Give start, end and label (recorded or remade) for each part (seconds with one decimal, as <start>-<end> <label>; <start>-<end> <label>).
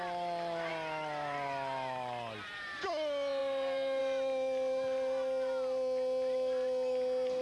0.0-7.4 recorded